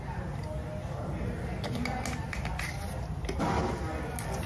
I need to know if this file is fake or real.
real